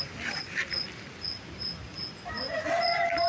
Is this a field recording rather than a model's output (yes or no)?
yes